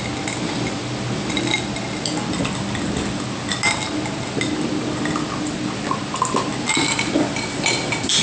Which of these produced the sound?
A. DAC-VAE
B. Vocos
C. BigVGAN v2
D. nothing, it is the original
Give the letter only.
D